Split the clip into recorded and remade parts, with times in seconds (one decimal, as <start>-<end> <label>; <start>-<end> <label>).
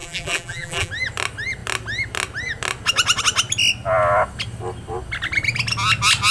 0.0-0.9 remade; 0.9-6.3 recorded